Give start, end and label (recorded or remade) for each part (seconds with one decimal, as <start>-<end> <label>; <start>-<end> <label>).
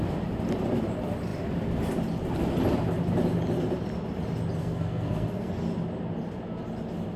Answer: 0.0-4.6 recorded; 4.6-5.5 remade; 5.5-7.2 recorded